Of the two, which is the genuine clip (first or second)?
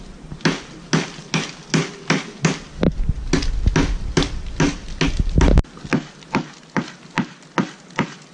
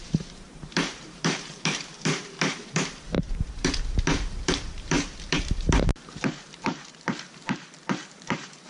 first